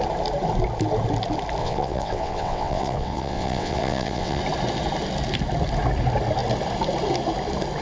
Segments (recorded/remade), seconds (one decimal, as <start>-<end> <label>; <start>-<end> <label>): 0.0-1.6 recorded; 1.6-4.4 remade; 4.4-7.8 recorded